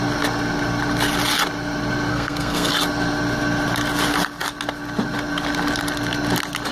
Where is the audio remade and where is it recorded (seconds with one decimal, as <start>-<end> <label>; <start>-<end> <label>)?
0.0-2.1 recorded; 2.1-2.7 remade; 2.7-6.7 recorded